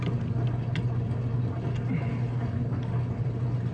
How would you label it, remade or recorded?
recorded